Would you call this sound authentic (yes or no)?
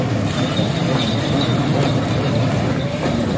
yes